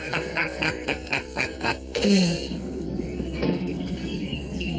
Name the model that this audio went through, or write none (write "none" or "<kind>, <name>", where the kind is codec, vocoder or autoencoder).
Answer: codec, SNAC